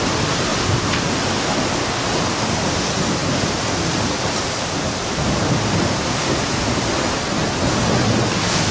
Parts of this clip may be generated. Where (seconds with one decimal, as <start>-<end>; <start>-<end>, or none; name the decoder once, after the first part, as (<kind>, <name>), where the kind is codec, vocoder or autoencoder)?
0.5-1.2 (vocoder, BigVGAN v2); 5.0-6.2